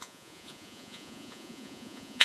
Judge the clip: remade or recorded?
remade